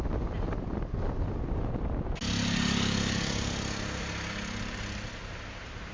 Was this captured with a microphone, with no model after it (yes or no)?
yes